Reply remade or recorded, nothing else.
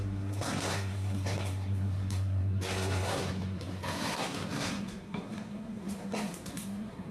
remade